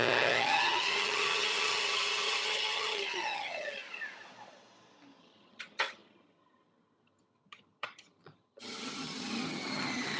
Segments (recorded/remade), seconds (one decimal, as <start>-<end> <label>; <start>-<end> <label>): 0.0-3.8 remade; 3.8-5.2 recorded; 5.2-10.2 remade